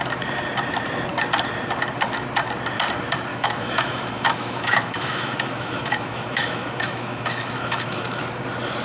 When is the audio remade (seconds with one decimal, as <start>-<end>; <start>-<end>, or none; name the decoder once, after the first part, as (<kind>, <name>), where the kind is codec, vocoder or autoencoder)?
3.3-8.2 (autoencoder, DAC-VAE)